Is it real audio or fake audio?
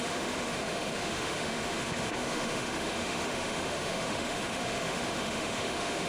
fake